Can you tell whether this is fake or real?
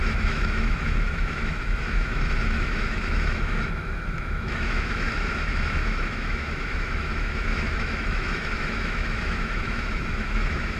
fake